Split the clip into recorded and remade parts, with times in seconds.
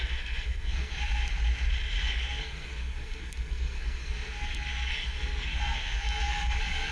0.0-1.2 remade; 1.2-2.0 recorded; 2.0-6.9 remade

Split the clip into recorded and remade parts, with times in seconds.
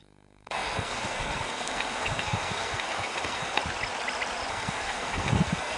0.0-3.6 remade; 3.6-4.5 recorded; 4.5-5.8 remade